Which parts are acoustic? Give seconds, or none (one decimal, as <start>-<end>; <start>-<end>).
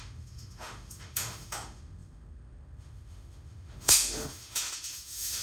none